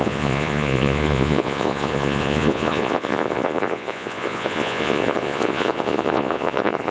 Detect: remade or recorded remade